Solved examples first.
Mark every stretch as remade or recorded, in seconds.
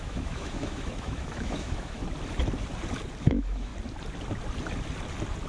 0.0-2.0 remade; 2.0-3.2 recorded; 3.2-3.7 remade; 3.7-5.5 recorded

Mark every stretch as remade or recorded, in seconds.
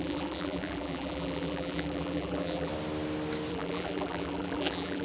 0.0-2.7 remade; 2.7-3.5 recorded; 3.5-5.0 remade